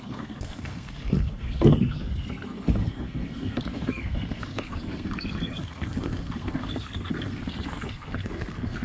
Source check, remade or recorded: remade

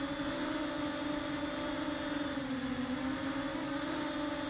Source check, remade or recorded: recorded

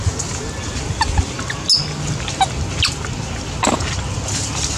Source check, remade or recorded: recorded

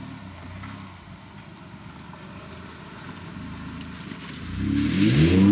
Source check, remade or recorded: recorded